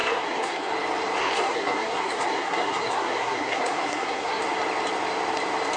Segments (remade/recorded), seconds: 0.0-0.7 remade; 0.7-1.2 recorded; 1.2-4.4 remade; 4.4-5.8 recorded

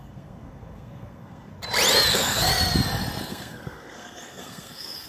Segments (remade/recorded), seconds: 0.0-1.5 remade; 1.5-2.1 recorded; 2.1-2.5 remade; 2.5-3.3 recorded; 3.3-5.1 remade

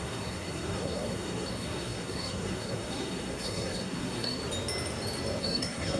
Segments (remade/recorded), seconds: 0.0-4.4 remade; 4.4-5.4 recorded; 5.4-6.0 remade

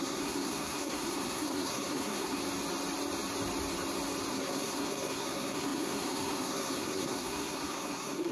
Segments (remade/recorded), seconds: 0.0-2.4 remade; 2.4-4.3 recorded; 4.3-8.3 remade

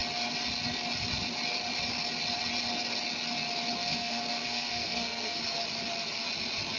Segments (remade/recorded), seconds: 0.0-3.8 recorded; 3.8-5.4 remade; 5.4-6.8 recorded

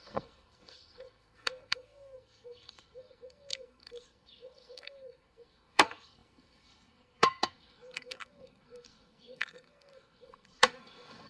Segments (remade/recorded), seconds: 0.0-11.3 remade

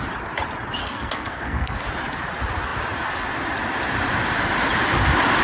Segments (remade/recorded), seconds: 0.0-0.8 recorded; 0.8-1.8 remade; 1.8-5.4 recorded

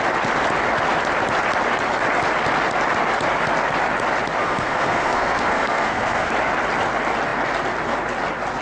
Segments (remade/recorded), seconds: 0.0-4.4 recorded; 4.4-6.3 remade; 6.3-8.6 recorded